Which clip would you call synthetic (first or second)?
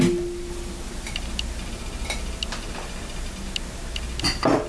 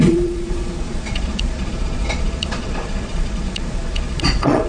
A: second